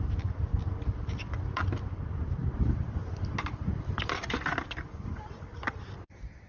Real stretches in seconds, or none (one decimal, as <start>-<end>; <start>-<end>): 0.0-6.5